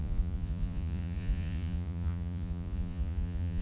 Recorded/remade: remade